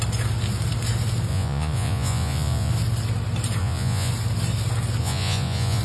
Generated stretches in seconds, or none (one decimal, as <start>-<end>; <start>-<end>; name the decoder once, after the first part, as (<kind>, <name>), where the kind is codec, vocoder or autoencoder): 1.3-2.7 (vocoder, Vocos); 3.6-4.1; 5.0-5.8